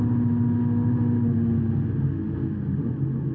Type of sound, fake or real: real